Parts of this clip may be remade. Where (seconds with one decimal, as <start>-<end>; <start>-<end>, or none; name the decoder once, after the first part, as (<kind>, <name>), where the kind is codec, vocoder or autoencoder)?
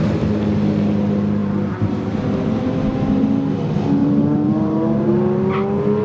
4.0-5.1 (vocoder, BigVGAN v2)